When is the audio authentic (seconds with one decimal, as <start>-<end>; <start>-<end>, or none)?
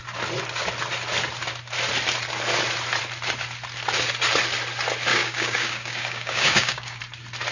0.0-5.1; 7.0-7.5